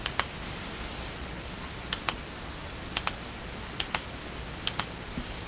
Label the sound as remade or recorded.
recorded